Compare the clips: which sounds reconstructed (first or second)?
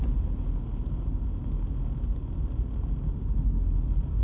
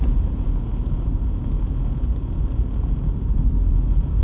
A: second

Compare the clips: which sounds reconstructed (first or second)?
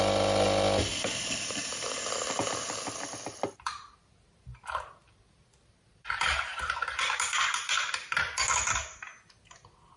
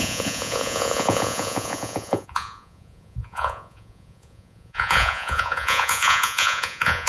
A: second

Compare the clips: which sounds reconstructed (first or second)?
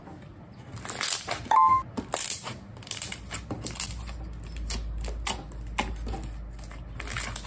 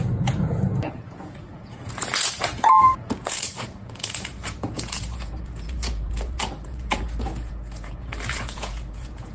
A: second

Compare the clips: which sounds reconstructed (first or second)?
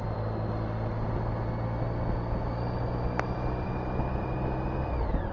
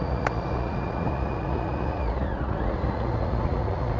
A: second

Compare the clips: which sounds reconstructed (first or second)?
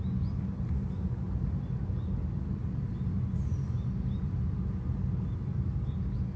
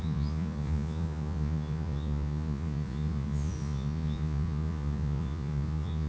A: second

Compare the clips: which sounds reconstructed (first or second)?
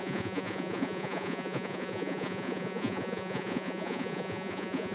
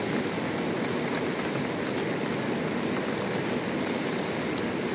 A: first